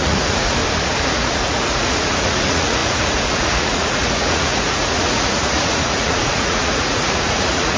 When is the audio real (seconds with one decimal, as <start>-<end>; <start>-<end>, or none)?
0.6-1.1